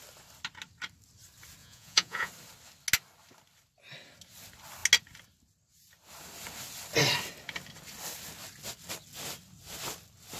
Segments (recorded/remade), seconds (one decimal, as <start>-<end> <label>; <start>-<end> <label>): 0.0-1.6 recorded; 1.6-2.3 remade; 2.3-10.4 recorded